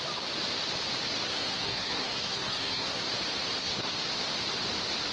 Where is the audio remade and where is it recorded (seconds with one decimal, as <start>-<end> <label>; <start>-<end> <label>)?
0.0-1.1 recorded; 1.1-3.0 remade; 3.0-3.6 recorded; 3.6-4.1 remade; 4.1-5.1 recorded